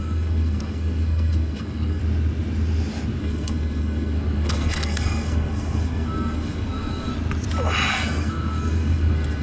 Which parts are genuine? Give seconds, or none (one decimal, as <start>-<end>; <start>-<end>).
2.0-3.2; 7.1-7.9